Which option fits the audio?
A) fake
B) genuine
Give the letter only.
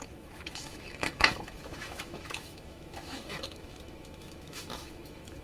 A